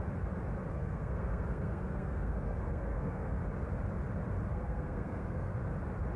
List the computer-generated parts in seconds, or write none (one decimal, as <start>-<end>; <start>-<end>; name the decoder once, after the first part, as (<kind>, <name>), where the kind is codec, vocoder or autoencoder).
0.7-3.4 (codec, SNAC); 4.5-5.6